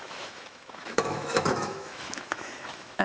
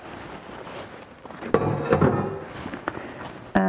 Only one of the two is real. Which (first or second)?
second